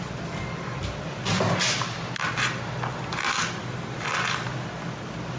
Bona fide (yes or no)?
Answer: yes